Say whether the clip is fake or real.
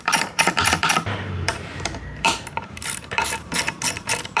fake